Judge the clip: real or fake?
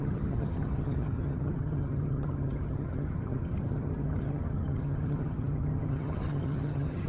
fake